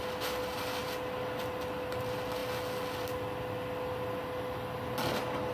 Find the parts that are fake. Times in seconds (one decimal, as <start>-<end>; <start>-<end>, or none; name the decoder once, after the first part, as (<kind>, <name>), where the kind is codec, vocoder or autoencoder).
none